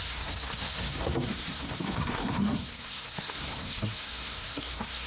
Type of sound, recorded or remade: remade